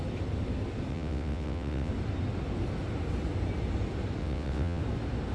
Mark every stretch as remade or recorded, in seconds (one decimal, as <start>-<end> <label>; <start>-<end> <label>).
0.0-0.9 recorded; 0.9-1.9 remade; 1.9-4.2 recorded; 4.2-4.8 remade; 4.8-5.3 recorded